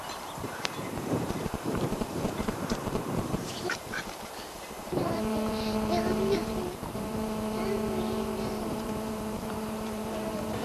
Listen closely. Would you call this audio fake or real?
fake